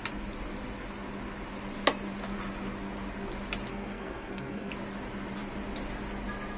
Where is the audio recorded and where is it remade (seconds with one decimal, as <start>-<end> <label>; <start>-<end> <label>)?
0.0-3.7 recorded; 3.7-4.7 remade; 4.7-6.6 recorded